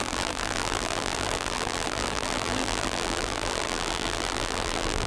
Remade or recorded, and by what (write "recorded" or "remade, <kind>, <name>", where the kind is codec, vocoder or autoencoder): remade, vocoder, BigVGAN v2